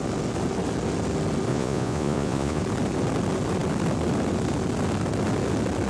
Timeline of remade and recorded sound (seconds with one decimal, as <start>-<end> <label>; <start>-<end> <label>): 0.0-1.5 recorded; 1.5-2.6 remade; 2.6-5.9 recorded